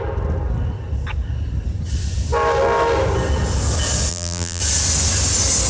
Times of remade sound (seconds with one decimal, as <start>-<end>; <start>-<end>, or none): 4.1-4.6